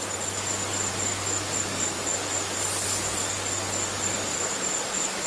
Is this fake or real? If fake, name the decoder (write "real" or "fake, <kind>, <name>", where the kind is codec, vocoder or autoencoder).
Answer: real